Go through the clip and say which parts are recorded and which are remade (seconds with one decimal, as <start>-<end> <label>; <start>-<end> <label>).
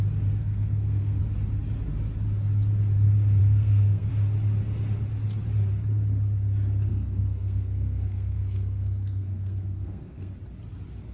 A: 0.0-0.4 recorded; 0.4-1.2 remade; 1.2-3.4 recorded; 3.4-4.1 remade; 4.1-6.9 recorded; 6.9-10.3 remade; 10.3-11.1 recorded